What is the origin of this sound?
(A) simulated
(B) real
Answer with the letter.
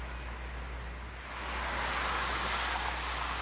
B